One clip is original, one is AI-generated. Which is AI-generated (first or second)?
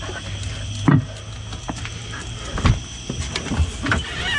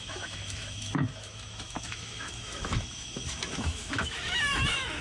second